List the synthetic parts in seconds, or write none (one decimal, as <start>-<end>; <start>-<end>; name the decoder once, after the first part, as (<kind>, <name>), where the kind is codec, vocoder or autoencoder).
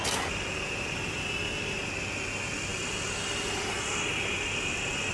none